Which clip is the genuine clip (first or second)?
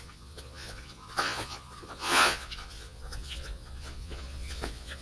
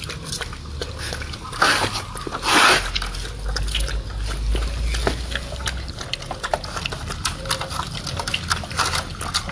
second